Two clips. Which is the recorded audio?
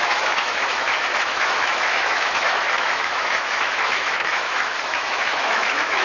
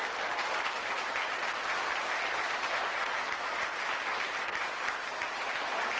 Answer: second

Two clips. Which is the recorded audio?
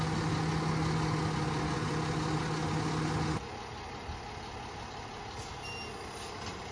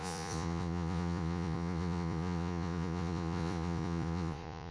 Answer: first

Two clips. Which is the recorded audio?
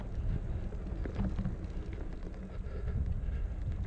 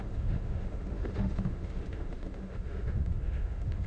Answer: first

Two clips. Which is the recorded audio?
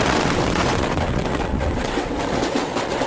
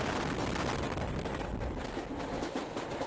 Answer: second